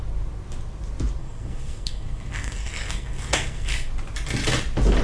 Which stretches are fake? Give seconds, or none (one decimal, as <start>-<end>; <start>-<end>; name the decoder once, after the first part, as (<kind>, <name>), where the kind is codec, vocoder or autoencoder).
1.2-3.9 (codec, SNAC)